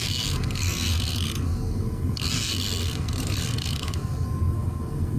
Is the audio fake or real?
fake